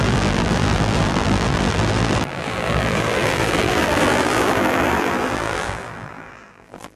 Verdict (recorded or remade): remade